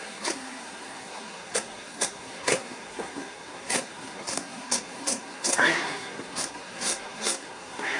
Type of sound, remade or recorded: remade